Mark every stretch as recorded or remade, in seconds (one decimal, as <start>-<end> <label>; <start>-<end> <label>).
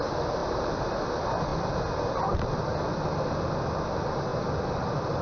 0.0-0.4 recorded; 0.4-1.0 remade; 1.0-4.3 recorded; 4.3-5.2 remade